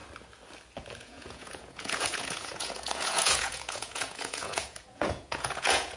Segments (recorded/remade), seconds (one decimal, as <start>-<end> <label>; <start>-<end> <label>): 0.0-1.0 recorded; 1.0-6.0 remade